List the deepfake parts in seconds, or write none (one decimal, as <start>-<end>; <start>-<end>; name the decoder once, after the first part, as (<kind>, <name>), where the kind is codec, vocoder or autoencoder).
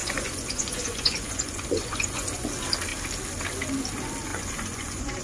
0.0-2.5 (vocoder, Vocos); 4.3-5.2